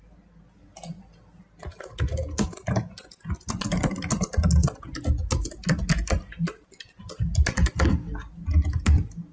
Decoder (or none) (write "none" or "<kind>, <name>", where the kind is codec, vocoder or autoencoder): none